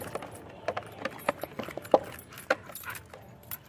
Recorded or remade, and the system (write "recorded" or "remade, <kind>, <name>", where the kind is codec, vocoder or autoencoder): recorded